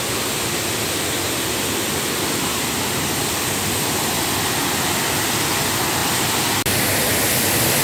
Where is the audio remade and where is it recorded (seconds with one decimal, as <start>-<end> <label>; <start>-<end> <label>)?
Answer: 0.0-7.8 recorded